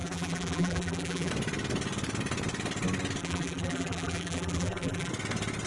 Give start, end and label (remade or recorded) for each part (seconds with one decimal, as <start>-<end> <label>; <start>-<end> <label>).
0.0-1.3 remade; 1.3-3.2 recorded; 3.2-5.1 remade; 5.1-5.7 recorded